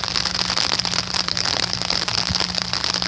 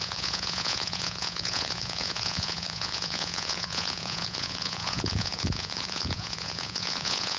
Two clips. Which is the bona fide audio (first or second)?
first